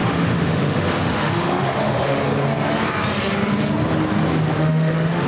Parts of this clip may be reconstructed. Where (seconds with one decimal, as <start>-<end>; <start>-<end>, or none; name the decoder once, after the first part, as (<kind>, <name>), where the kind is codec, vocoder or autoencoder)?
0.0-2.2 (autoencoder, DAC-VAE); 4.5-5.3